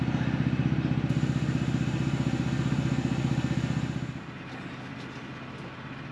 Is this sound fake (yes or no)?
no